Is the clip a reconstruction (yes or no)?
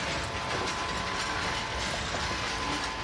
no